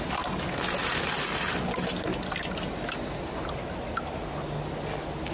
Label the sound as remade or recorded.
recorded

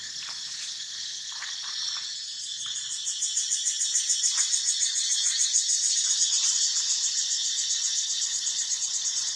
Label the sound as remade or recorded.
recorded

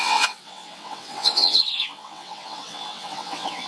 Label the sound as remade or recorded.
remade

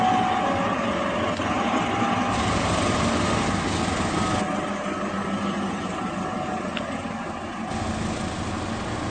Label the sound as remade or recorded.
recorded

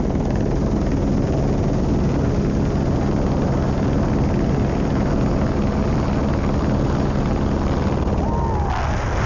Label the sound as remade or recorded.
recorded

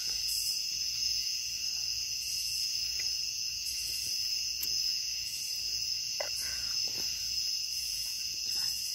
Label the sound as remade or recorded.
remade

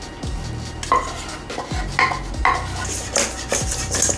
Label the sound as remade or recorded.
recorded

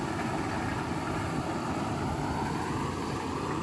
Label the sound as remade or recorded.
recorded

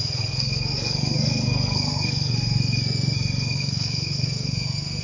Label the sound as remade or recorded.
remade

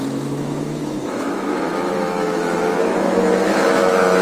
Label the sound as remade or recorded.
remade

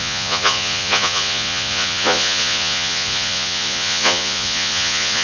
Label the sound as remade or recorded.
remade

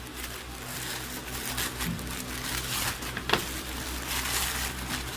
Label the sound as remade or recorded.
recorded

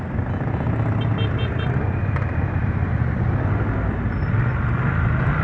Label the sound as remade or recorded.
recorded